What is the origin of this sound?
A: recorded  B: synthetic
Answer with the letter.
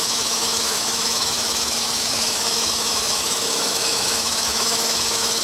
B